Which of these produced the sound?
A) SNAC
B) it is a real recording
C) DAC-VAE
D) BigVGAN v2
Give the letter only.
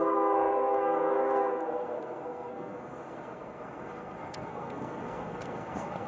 A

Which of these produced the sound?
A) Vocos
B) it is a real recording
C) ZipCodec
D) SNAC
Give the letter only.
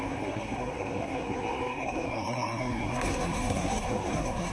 D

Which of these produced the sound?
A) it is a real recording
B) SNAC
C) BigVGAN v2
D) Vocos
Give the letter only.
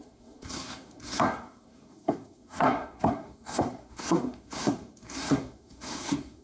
B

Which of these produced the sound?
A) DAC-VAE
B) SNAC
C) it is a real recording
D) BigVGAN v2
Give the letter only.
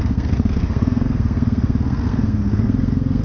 B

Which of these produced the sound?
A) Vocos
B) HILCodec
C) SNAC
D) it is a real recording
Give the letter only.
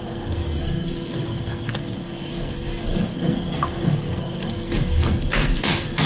C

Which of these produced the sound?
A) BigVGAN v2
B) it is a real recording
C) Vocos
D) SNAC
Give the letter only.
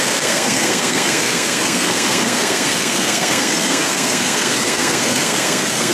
D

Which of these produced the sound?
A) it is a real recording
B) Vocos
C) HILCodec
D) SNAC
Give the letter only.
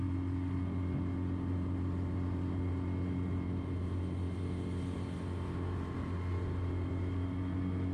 A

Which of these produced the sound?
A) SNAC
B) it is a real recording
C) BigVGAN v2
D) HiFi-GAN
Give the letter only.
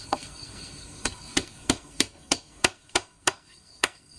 A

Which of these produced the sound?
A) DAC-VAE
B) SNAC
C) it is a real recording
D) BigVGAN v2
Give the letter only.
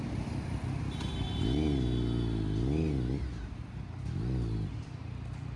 C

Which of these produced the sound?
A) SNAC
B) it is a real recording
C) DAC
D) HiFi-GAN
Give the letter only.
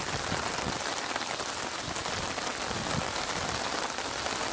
B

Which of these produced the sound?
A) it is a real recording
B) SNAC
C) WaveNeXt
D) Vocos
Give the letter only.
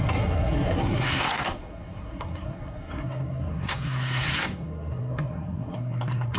B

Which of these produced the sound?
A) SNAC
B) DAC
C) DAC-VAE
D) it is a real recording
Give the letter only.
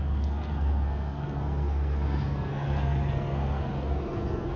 A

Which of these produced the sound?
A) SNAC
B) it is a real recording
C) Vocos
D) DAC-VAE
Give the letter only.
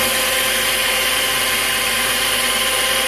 B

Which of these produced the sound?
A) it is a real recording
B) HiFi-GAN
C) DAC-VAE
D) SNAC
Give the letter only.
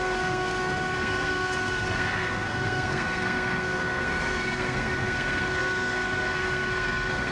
D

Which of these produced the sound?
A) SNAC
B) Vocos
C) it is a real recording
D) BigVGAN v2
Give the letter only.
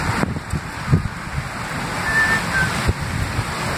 C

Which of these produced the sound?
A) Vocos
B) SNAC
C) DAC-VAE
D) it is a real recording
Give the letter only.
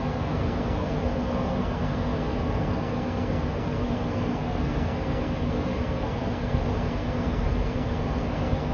B